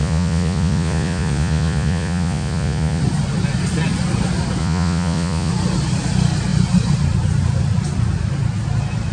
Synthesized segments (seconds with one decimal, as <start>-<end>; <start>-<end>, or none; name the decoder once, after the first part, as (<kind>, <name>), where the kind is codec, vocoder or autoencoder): 0.0-3.0 (vocoder, Vocos); 4.6-5.5